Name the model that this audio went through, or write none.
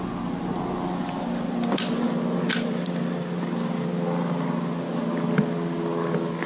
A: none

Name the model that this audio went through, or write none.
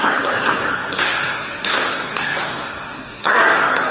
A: codec, SNAC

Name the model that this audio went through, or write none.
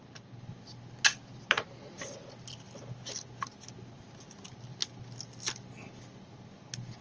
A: none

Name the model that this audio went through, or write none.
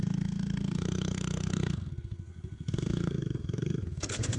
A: codec, SNAC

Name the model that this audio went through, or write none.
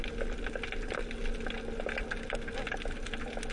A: none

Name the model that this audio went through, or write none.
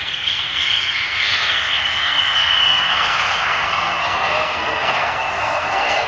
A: codec, SNAC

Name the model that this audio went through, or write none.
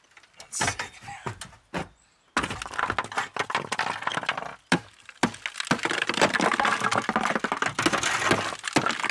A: none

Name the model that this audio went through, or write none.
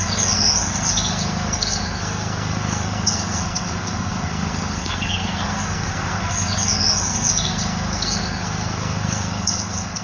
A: codec, SNAC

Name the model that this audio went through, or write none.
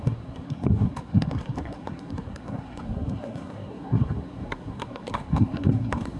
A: codec, SNAC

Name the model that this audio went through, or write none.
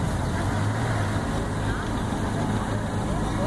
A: none